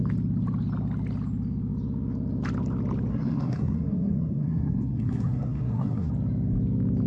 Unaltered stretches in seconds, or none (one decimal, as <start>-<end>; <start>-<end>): 0.0-3.1; 6.1-7.1